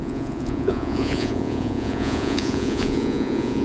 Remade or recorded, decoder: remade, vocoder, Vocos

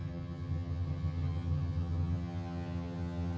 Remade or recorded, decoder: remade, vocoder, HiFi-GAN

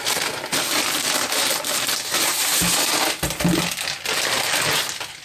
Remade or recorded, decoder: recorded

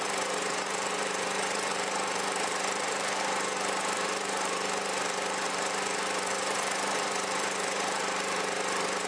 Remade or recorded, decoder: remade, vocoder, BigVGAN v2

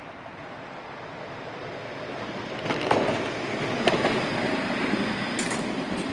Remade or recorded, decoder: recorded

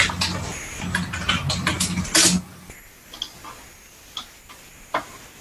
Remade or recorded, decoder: recorded